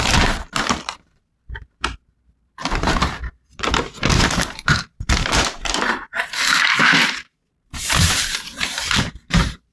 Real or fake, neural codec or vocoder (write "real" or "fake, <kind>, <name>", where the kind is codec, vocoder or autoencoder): fake, vocoder, BigVGAN v2